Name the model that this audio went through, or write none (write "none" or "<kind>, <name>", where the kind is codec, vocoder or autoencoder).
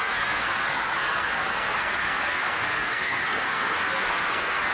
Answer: codec, SNAC